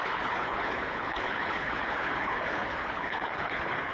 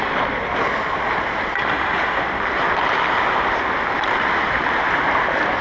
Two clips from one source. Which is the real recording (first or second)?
second